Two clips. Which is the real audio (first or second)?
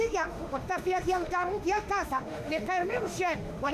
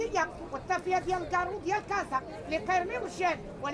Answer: second